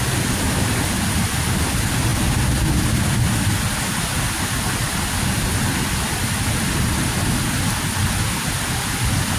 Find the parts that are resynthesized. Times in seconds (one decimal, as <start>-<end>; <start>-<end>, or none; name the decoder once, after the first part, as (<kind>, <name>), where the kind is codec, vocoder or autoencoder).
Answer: none